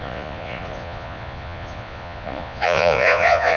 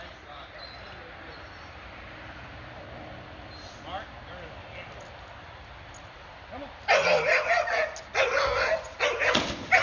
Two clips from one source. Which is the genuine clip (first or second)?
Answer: second